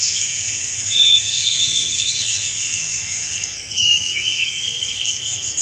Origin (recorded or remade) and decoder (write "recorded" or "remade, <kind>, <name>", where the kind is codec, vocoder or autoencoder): remade, codec, SNAC